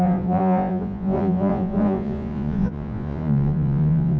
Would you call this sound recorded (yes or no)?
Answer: no